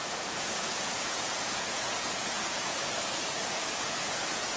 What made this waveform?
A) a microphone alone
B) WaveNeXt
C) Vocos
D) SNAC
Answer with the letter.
C